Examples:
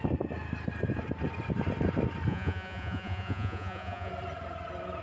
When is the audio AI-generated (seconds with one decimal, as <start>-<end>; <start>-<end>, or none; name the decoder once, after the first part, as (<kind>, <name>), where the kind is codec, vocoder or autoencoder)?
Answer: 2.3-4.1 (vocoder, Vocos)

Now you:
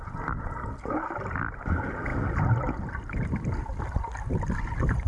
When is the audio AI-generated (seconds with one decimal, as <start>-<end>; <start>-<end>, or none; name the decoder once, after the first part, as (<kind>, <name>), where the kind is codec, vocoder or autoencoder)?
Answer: none

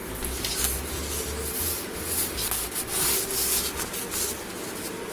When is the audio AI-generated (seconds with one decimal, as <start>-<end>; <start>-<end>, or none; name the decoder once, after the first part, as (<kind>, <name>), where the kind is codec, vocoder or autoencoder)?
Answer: none

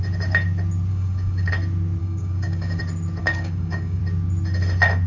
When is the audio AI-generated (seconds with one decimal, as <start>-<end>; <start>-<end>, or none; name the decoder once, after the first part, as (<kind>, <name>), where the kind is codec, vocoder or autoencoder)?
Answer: 0.9-1.5 (codec, DAC); 2.0-2.8; 3.2-4.0

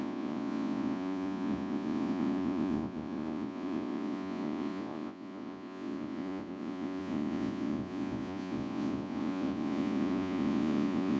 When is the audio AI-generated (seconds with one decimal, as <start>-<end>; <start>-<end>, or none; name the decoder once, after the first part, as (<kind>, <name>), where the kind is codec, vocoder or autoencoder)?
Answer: 0.0-11.2 (vocoder, Vocos)